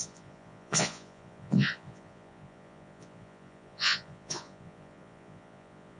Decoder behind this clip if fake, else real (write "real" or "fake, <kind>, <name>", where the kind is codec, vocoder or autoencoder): fake, vocoder, Vocos